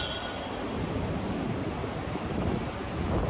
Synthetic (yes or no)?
no